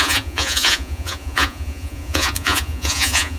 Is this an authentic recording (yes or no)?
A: no